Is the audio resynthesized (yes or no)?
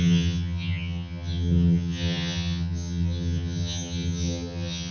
yes